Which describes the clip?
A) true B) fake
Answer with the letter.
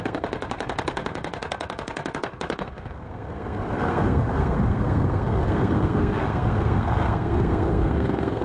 B